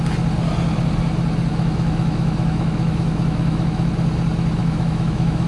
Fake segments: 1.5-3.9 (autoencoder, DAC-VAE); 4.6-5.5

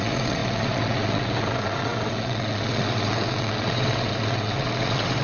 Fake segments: 0.0-5.2 (vocoder, WaveNeXt)